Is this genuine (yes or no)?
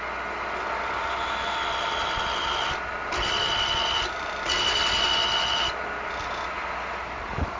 yes